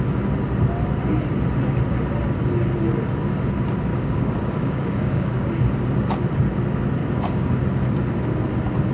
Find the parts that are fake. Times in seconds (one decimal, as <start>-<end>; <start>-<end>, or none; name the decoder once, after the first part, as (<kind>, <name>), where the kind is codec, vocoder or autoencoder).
3.9-5.5 (codec, DAC); 7.0-7.6